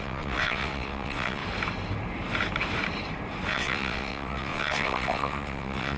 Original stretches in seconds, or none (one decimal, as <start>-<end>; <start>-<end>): 1.4-3.5